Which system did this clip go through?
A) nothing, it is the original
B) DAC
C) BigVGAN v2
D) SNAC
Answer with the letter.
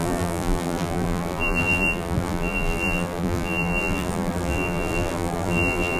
C